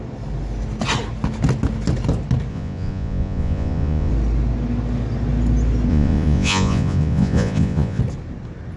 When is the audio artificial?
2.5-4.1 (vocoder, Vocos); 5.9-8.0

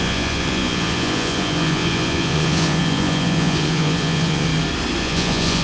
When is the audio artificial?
0.0-4.5 (vocoder, Vocos); 5.0-5.6

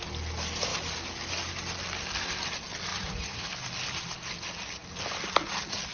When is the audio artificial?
2.9-3.5 (vocoder, Vocos)

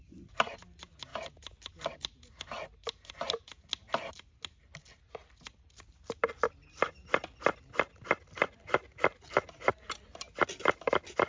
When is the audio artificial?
none

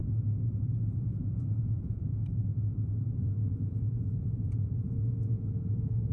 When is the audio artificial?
1.0-2.2 (vocoder, Vocos); 3.2-6.1

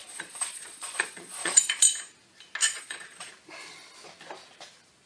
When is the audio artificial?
0.0-1.8 (vocoder, Vocos); 2.6-3.3